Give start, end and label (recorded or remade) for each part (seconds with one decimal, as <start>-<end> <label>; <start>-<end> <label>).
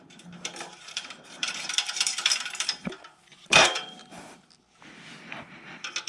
0.0-0.7 recorded; 0.7-4.4 remade; 4.4-6.1 recorded